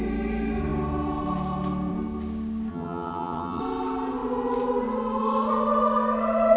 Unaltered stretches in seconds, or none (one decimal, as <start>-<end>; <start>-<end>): 0.0-2.7; 3.6-6.6